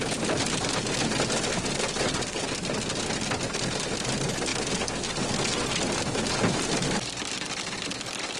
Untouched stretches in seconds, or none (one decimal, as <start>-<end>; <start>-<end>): 0.0-8.4